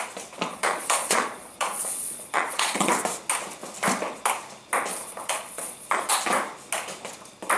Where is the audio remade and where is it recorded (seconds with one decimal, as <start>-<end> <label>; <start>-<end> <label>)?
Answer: 0.0-0.5 recorded; 0.5-2.9 remade; 2.9-4.9 recorded; 4.9-6.1 remade; 6.1-7.6 recorded